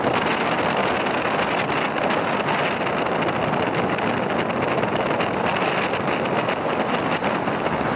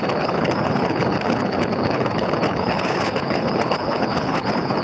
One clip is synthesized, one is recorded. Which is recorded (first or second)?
first